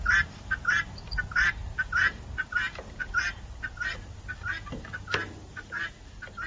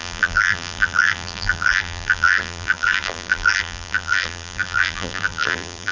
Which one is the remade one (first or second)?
second